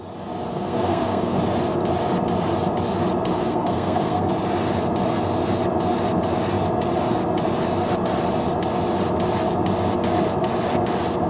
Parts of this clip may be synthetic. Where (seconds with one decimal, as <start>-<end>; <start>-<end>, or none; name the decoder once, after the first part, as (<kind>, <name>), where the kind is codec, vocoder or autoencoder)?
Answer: 0.5-1.4 (codec, SNAC); 3.3-4.3

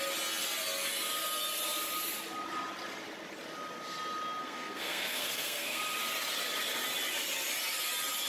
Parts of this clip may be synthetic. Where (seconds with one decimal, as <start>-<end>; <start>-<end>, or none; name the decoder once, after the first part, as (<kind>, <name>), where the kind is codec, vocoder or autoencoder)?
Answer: 4.4-5.8 (codec, SNAC)